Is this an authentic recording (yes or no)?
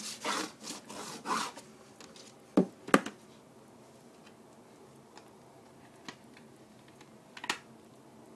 yes